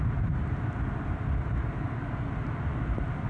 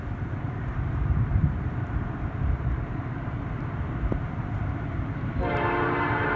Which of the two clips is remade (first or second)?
second